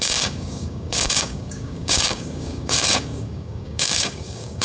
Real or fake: fake